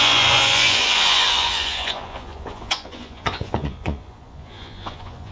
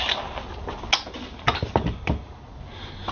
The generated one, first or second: first